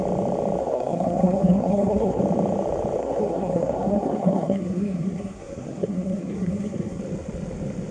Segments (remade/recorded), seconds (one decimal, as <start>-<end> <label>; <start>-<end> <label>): 0.0-0.6 recorded; 0.6-2.2 remade; 2.2-3.0 recorded; 3.0-7.0 remade; 7.0-7.9 recorded